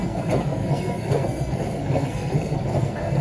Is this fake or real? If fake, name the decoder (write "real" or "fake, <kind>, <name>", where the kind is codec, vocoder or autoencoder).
fake, codec, SNAC